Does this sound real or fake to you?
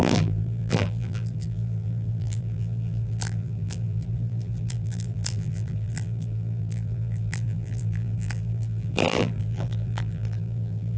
fake